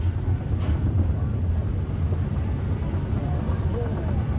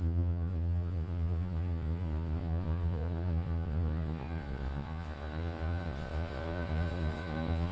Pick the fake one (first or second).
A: second